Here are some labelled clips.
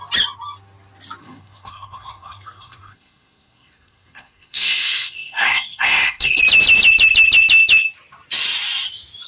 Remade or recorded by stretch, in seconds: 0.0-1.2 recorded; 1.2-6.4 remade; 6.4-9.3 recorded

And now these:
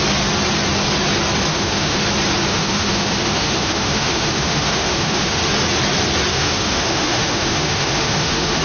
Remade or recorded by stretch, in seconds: 0.0-1.5 recorded; 1.5-2.0 remade; 2.0-2.5 recorded; 2.5-5.4 remade; 5.4-6.3 recorded; 6.3-8.6 remade

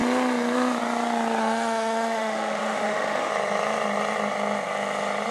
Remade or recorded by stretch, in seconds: 0.0-1.4 recorded; 1.4-3.3 remade; 3.3-5.3 recorded

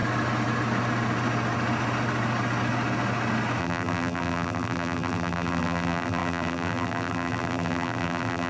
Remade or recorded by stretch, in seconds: 0.0-3.6 recorded; 3.6-8.5 remade

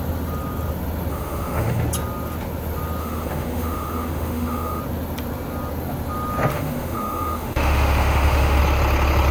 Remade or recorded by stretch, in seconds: 0.0-1.1 recorded; 1.1-1.8 remade; 1.8-3.0 recorded; 3.0-4.8 remade; 4.8-6.5 recorded; 6.5-8.6 remade; 8.6-9.3 recorded

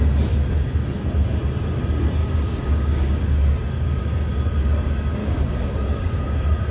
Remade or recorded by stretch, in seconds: 0.0-2.2 recorded; 2.2-3.2 remade; 3.2-5.2 recorded; 5.2-6.2 remade; 6.2-6.7 recorded

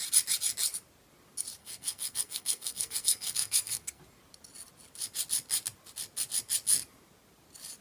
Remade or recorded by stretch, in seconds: 0.0-1.6 recorded; 1.6-4.0 remade; 4.0-7.8 recorded

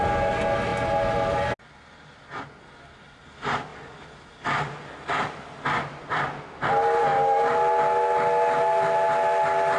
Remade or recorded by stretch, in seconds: 0.0-9.8 recorded